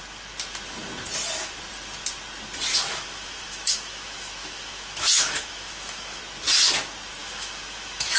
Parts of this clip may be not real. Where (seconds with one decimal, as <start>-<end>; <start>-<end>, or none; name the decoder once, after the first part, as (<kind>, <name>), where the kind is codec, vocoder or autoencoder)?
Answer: 2.7-6.2 (autoencoder, DAC-VAE); 7.2-8.2